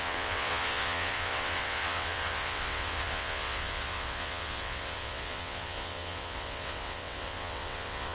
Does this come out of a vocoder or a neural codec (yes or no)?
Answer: yes